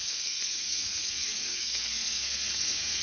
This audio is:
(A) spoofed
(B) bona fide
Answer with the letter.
A